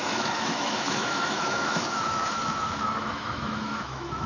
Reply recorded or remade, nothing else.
remade